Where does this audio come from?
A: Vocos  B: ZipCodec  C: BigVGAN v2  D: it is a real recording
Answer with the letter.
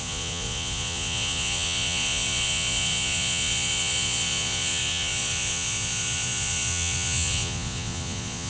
A